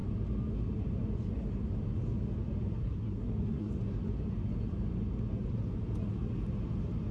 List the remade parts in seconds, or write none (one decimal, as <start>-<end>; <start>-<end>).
2.8-3.7